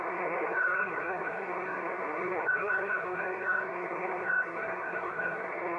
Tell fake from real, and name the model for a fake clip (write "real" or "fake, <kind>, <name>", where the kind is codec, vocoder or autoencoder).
fake, codec, SNAC